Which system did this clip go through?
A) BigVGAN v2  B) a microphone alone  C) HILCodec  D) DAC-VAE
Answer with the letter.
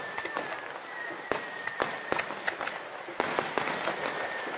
B